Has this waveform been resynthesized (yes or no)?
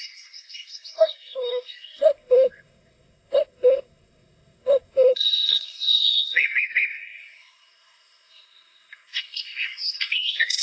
yes